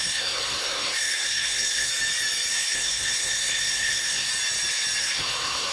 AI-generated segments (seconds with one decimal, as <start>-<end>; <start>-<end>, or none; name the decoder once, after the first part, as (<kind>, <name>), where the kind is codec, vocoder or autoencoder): 0.0-1.9 (codec, SNAC); 2.5-4.3; 5.0-5.7